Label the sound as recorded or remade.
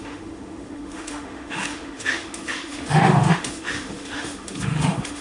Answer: remade